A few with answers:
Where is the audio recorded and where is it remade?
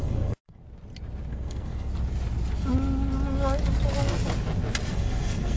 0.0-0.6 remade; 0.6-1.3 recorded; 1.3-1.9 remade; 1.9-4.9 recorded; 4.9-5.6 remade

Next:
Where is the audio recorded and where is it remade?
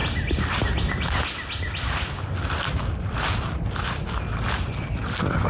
0.0-5.5 recorded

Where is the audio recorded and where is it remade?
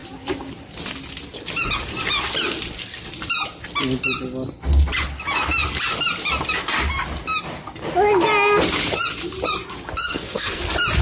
0.0-10.0 recorded; 10.0-10.6 remade; 10.6-11.0 recorded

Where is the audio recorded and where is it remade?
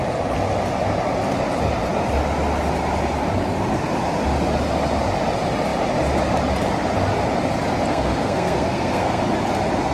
0.0-7.9 recorded; 7.9-9.2 remade; 9.2-9.9 recorded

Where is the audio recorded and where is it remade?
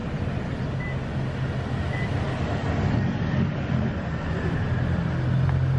0.0-5.8 recorded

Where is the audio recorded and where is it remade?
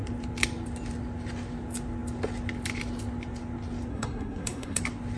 0.0-3.9 recorded; 3.9-4.8 remade; 4.8-5.2 recorded